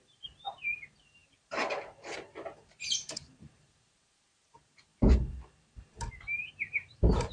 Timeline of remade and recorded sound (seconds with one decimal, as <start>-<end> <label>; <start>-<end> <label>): 0.0-4.9 remade; 4.9-6.5 recorded; 6.5-7.3 remade